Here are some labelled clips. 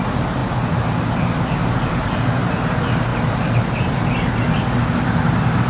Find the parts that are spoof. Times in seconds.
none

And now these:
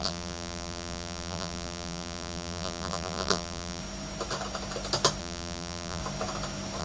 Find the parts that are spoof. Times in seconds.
0.0-3.8; 5.2-6.0